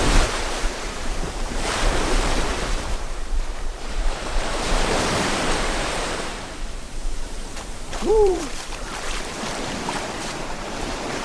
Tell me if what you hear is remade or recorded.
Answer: remade